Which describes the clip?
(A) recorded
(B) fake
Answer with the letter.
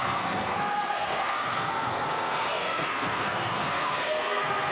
B